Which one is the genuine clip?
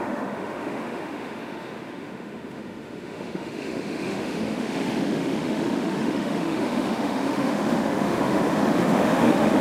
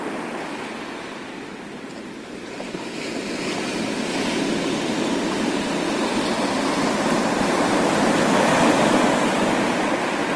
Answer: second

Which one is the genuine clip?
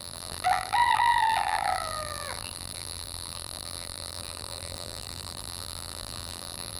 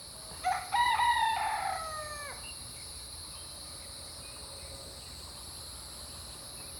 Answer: second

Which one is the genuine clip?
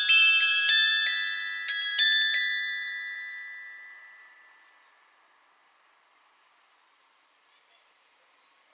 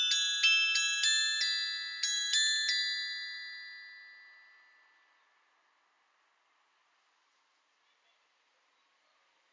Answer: second